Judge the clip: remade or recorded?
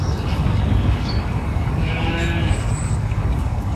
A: remade